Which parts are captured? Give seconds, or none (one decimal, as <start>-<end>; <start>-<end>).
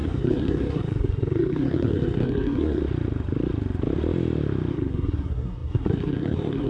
2.8-4.7